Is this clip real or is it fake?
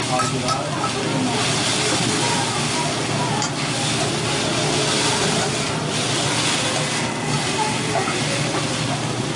real